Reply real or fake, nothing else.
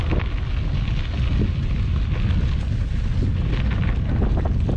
real